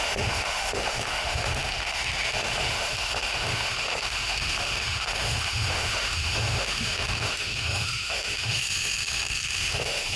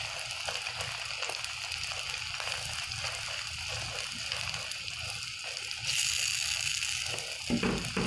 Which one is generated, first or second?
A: first